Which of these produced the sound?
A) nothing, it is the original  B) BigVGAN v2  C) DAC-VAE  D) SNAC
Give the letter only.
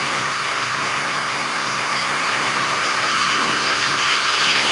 D